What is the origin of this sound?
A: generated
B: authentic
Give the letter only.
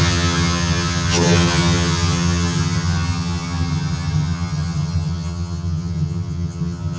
A